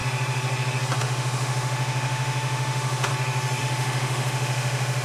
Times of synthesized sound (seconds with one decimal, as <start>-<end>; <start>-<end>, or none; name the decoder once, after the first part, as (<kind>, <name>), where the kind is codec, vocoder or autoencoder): 1.0-3.1 (autoencoder, DAC-VAE); 3.6-5.0